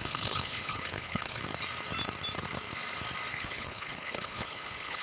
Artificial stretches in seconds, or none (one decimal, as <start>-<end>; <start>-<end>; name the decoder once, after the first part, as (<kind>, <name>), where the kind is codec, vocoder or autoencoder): 0.0-1.4 (codec, HILCodec); 3.3-5.0